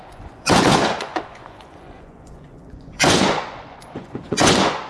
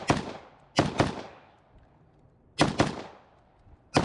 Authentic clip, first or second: second